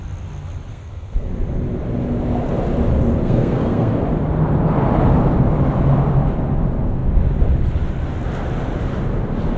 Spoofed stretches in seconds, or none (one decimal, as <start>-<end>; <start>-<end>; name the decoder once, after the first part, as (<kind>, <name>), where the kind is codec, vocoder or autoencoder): 0.7-1.3 (codec, SNAC); 3.2-3.9